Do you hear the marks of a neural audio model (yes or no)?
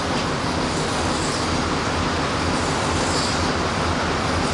no